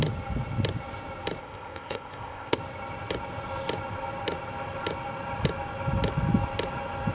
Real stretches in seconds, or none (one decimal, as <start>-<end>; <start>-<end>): 0.0-1.4; 2.6-7.1